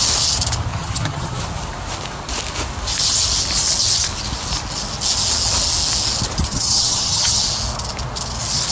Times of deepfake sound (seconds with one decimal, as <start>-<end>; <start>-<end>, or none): 0.7-1.4; 6.5-7.4